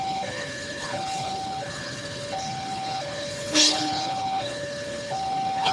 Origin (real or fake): fake